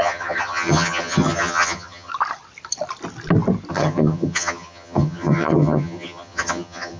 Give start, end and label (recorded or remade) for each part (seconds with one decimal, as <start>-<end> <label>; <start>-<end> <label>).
0.0-2.1 remade; 2.1-3.7 recorded; 3.7-7.0 remade